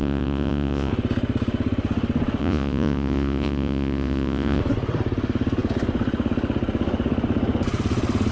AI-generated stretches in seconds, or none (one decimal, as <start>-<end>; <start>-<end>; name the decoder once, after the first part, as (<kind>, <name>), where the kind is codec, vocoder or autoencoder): 0.0-0.9 (vocoder, Vocos); 2.4-4.6